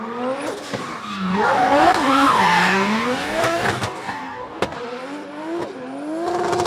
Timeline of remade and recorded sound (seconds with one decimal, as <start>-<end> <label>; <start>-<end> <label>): 0.0-0.9 recorded; 0.9-4.8 remade; 4.8-6.7 recorded